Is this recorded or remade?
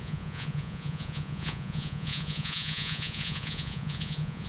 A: remade